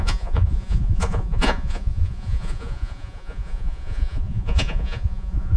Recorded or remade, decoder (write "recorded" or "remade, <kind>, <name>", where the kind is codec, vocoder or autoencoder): remade, vocoder, Vocos